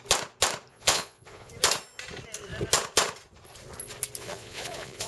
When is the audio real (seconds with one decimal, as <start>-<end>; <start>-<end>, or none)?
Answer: 0.0-0.7; 1.5-4.2